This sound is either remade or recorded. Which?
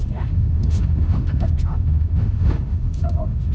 remade